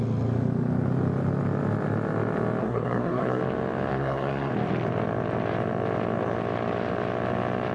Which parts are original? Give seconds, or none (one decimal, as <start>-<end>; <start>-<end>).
0.0-2.6; 3.4-3.9; 4.5-7.7